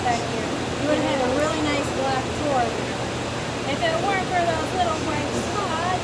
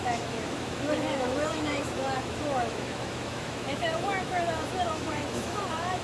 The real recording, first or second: first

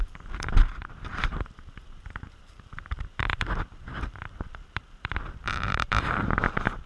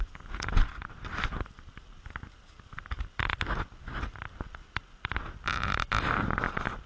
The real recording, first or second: second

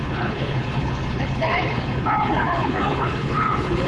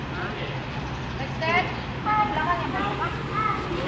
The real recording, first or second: second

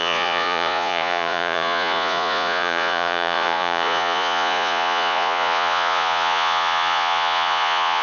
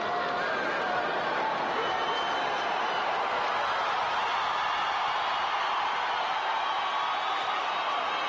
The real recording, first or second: second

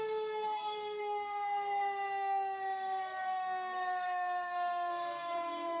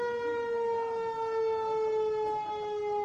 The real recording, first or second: second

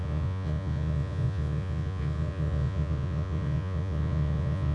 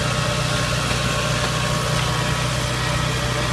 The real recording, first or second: second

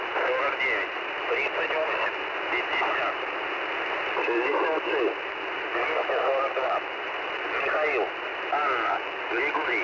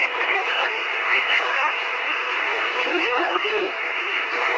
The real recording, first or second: first